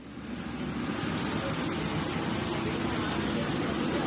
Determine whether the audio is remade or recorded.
recorded